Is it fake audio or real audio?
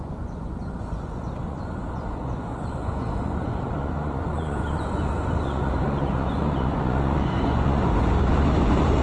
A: fake